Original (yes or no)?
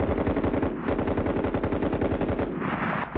yes